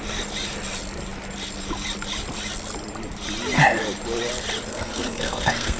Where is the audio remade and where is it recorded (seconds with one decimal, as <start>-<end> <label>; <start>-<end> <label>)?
0.0-4.7 recorded; 4.7-5.8 remade